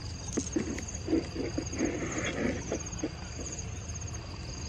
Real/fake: real